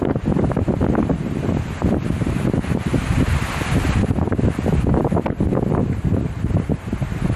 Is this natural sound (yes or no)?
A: no